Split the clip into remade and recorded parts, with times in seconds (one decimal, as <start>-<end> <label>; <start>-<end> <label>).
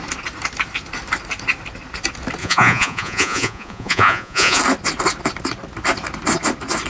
0.0-2.4 recorded; 2.4-4.6 remade; 4.6-6.9 recorded